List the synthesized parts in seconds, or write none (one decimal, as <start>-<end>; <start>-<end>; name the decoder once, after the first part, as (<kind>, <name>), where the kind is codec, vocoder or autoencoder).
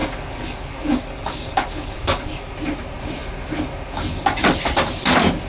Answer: 0.0-2.4 (codec, DAC)